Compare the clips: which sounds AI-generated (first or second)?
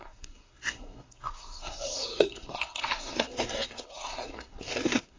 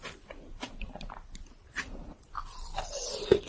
first